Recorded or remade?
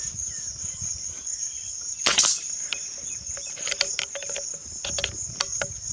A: recorded